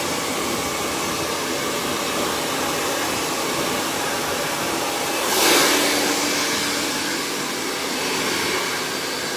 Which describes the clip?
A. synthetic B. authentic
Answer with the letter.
B